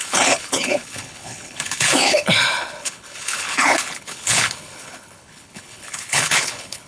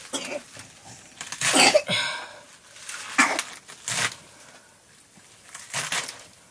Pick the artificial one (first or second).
first